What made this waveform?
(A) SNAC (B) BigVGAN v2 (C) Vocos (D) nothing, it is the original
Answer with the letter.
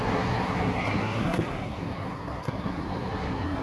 A